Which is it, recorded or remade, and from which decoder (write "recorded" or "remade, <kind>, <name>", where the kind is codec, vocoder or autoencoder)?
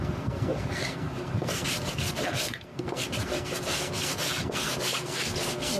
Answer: remade, codec, SNAC